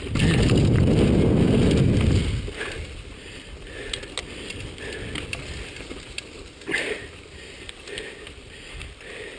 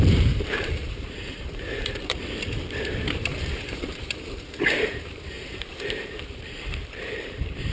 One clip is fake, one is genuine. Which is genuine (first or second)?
first